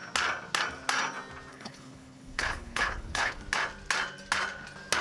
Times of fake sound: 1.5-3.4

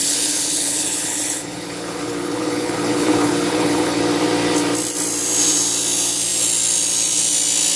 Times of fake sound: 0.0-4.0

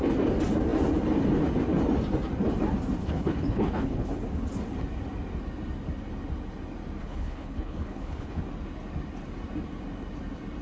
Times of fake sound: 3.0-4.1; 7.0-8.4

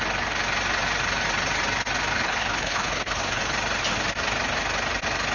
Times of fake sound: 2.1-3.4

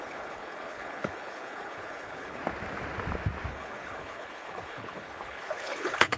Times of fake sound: 0.0-2.4; 3.5-6.2

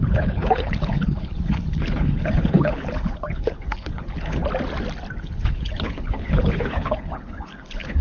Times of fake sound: 0.0-4.4; 5.2-8.0